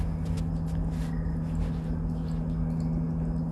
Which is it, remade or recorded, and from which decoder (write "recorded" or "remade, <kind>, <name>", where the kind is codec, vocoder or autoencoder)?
recorded